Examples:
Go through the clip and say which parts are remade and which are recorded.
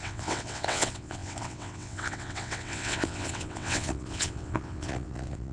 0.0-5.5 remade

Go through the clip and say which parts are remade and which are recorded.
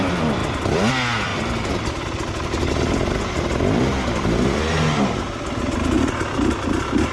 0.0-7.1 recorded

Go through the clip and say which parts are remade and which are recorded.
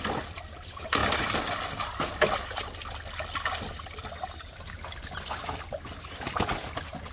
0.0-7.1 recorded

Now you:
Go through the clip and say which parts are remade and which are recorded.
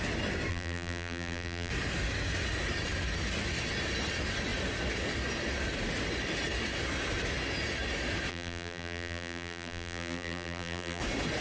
0.0-0.5 recorded; 0.5-1.7 remade; 1.7-8.3 recorded; 8.3-11.0 remade; 11.0-11.4 recorded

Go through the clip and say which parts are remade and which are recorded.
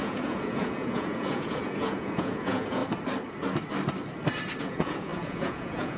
0.0-2.8 remade; 2.8-4.6 recorded; 4.6-6.0 remade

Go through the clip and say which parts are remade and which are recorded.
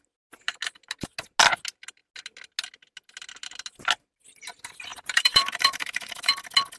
0.0-4.9 recorded; 4.9-6.3 remade; 6.3-6.8 recorded